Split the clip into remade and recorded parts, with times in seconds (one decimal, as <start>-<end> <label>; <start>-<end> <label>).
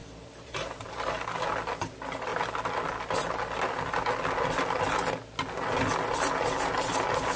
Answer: 0.0-1.1 remade; 1.1-7.4 recorded